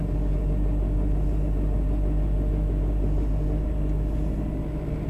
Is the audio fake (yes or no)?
no